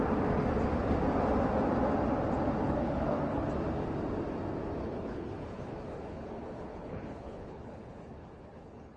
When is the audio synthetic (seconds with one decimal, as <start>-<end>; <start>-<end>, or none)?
2.6-3.4; 4.8-9.0